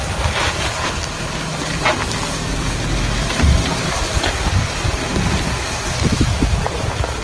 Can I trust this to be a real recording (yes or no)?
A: yes